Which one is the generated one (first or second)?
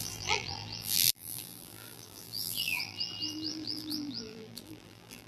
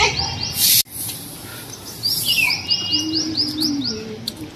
first